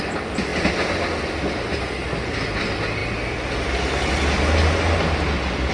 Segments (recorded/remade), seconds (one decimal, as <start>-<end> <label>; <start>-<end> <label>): 0.0-5.7 recorded